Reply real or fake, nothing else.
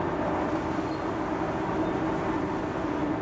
real